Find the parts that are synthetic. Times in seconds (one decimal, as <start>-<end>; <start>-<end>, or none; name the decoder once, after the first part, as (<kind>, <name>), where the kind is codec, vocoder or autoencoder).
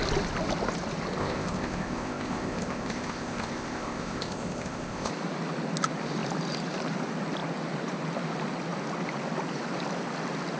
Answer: 1.2-5.1 (codec, ZipCodec)